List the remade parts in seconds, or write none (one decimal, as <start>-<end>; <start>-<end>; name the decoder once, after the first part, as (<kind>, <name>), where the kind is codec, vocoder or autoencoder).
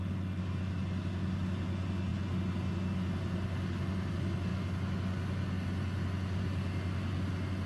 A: none